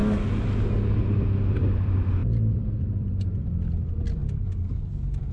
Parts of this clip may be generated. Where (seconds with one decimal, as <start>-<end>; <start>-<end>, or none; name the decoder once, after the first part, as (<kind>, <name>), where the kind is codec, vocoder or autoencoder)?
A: 1.0-4.2 (vocoder, BigVGAN v2); 4.7-5.3